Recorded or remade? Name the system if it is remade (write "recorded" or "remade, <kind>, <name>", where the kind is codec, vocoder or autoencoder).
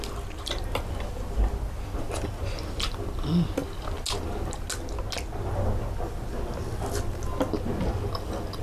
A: recorded